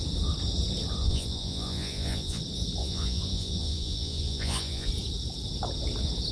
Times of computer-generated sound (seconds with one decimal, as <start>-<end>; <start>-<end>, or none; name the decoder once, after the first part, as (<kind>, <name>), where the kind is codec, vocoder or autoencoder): 1.0-2.4 (vocoder, Vocos); 2.8-4.9